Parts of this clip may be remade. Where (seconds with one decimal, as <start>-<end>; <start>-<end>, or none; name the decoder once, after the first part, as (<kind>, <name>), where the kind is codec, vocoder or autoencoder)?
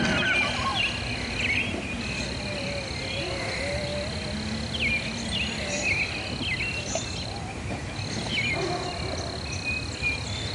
0.7-2.0 (vocoder, BigVGAN v2)